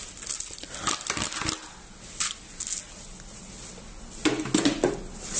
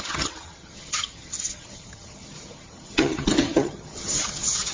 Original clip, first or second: first